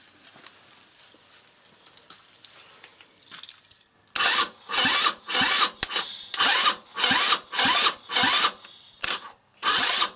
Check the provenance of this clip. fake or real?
real